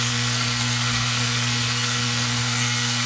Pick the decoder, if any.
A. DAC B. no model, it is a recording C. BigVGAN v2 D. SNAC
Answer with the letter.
D